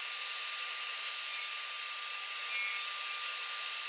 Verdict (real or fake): real